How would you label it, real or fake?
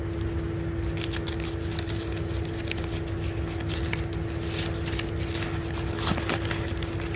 real